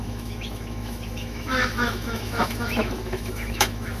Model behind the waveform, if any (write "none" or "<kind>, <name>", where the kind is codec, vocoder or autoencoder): autoencoder, DAC-VAE